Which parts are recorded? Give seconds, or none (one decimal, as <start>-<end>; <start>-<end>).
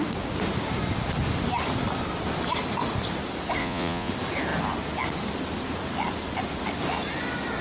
0.0-3.6; 4.1-7.6